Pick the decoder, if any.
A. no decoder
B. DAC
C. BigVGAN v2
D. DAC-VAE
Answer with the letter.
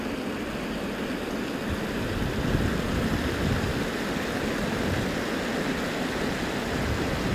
A